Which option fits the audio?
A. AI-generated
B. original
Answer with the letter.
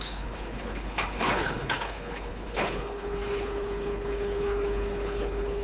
A